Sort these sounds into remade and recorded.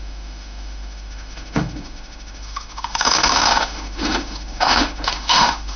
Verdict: remade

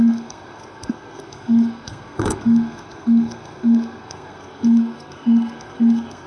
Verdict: remade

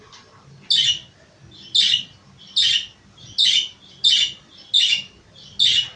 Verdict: recorded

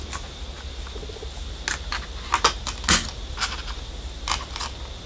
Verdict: recorded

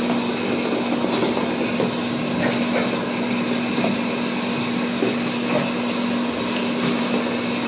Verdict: recorded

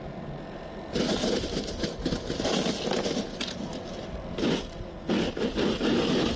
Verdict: recorded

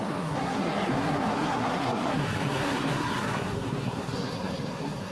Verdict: remade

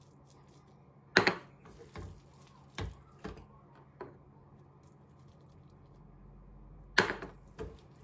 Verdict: recorded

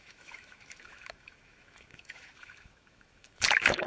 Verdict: remade